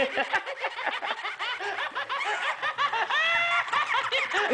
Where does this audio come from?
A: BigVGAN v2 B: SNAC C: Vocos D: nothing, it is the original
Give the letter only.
D